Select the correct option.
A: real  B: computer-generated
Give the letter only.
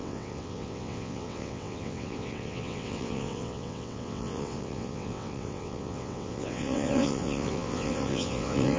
B